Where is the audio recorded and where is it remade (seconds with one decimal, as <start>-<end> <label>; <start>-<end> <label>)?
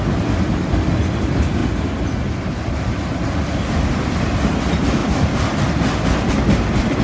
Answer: 0.0-7.0 recorded